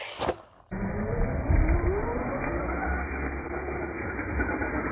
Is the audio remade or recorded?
recorded